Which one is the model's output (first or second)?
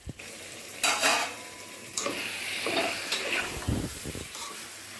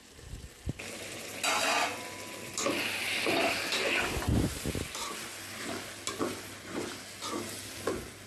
first